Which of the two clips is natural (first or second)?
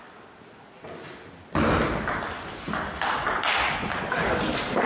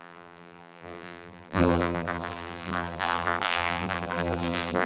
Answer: first